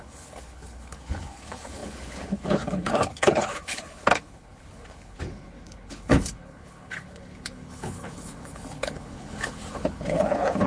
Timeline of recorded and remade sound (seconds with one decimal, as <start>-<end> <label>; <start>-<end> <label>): 0.0-10.7 remade